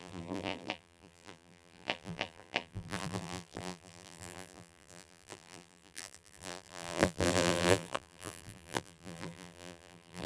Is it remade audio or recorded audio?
remade